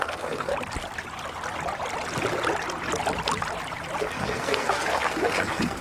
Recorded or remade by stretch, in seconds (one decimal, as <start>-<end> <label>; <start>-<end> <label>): 0.0-0.5 remade; 0.5-4.0 recorded; 4.0-5.8 remade